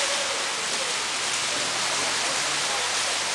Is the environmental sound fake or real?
real